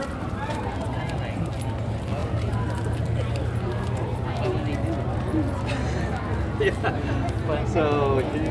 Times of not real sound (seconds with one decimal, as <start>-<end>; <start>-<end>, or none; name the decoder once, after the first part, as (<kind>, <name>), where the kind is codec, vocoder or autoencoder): none